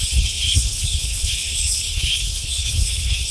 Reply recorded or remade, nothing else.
remade